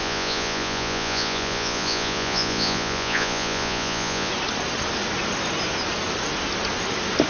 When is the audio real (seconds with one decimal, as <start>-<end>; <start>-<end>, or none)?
4.3-7.3